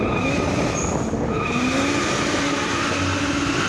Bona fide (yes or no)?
yes